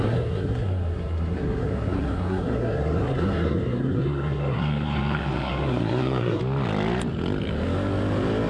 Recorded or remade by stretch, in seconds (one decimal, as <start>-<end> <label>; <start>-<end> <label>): 0.0-6.4 remade; 6.4-8.5 recorded